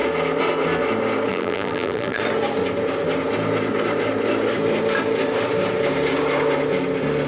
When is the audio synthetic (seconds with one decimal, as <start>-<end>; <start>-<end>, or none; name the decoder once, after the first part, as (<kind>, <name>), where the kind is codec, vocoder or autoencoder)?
1.3-2.2 (vocoder, BigVGAN v2)